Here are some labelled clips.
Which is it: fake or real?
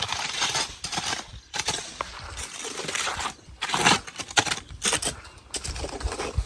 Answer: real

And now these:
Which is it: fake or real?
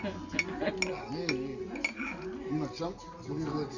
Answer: real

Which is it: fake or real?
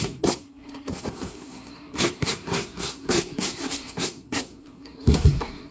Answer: fake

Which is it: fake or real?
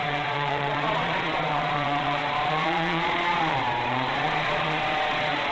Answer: fake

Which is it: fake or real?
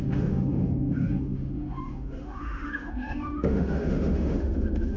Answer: fake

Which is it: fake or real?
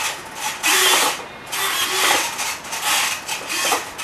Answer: real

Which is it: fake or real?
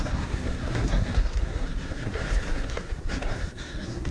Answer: fake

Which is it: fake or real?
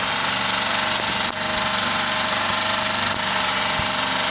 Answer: real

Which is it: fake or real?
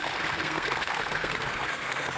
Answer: fake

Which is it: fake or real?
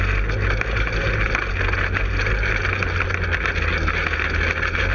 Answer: real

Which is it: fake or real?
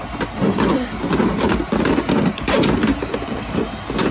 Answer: real